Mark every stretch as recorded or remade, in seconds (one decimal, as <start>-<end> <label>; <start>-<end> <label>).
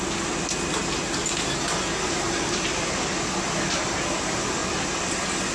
0.0-5.5 recorded